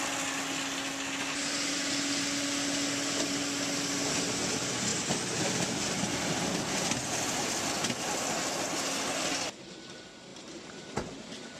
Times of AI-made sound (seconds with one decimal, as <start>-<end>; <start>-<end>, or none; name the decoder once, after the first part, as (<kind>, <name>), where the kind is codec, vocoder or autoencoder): 10.3-10.9 (vocoder, BigVGAN v2)

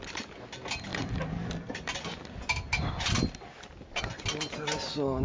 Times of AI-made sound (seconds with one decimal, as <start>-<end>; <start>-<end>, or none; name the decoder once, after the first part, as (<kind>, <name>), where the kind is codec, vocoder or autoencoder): none